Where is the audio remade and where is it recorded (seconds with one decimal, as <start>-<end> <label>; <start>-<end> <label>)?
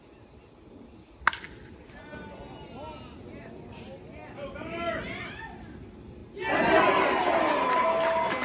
0.0-8.4 recorded